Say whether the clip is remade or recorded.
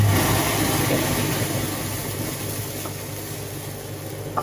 recorded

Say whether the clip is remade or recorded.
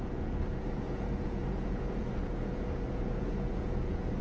remade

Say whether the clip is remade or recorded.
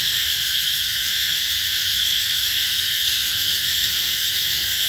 remade